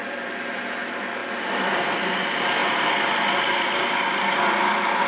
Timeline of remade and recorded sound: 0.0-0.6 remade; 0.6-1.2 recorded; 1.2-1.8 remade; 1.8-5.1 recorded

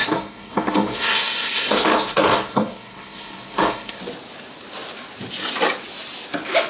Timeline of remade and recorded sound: 0.0-4.0 remade; 4.0-6.7 recorded

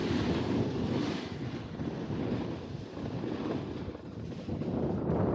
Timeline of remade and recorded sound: 0.0-5.3 recorded

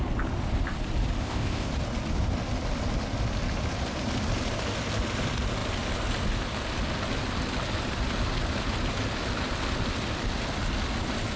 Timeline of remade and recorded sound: 0.0-1.2 recorded; 1.2-1.7 remade; 1.7-11.4 recorded

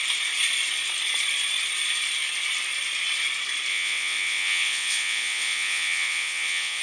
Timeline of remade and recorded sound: 0.0-3.7 recorded; 3.7-6.8 remade